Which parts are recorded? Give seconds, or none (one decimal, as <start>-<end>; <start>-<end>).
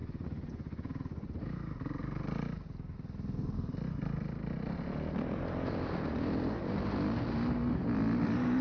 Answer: 1.4-8.6